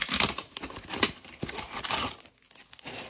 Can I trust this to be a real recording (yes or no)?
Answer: yes